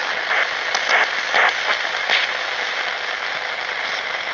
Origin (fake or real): real